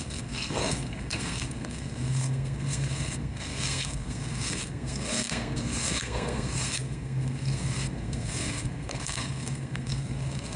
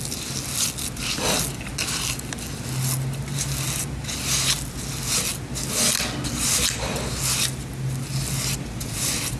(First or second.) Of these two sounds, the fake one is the first